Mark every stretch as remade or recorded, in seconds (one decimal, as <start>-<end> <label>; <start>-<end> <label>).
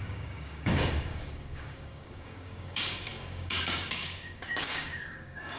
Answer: 0.0-5.6 remade